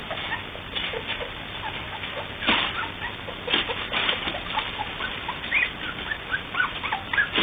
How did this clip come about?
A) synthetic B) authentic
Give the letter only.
B